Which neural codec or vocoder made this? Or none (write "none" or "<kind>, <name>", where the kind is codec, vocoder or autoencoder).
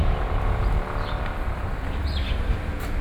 none